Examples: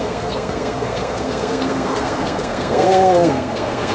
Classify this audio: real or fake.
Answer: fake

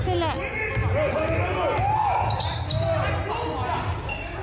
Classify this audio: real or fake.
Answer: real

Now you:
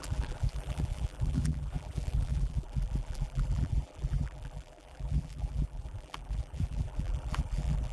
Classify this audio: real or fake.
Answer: fake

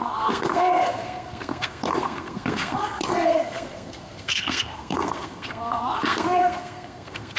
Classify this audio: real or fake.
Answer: fake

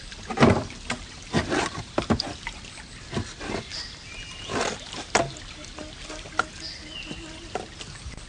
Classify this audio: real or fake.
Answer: real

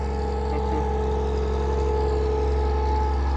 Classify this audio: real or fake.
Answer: real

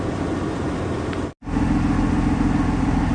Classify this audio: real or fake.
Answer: real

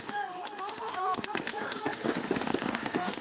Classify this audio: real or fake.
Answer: fake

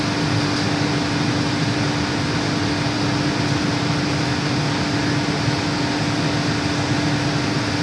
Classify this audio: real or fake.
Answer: real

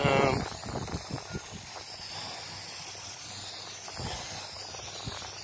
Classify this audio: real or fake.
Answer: real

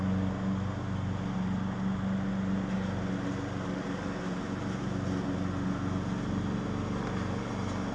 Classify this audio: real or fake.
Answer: real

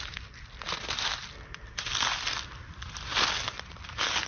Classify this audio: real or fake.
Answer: real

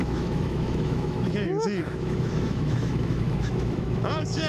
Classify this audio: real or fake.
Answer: fake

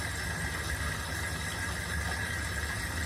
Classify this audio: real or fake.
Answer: real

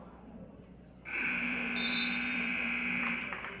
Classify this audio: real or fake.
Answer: fake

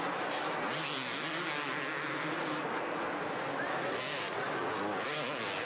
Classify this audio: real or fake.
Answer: real